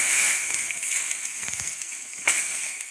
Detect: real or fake fake